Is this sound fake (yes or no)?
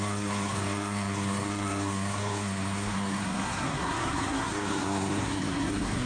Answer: yes